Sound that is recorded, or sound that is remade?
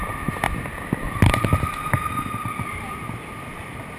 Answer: recorded